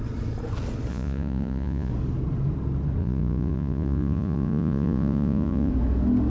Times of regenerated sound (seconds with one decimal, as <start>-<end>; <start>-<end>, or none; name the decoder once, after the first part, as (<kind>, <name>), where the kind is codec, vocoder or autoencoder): 0.9-1.9 (vocoder, Vocos); 3.0-5.7